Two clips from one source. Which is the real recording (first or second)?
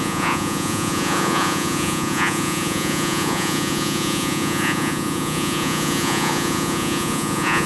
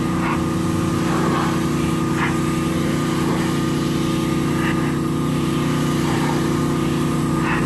second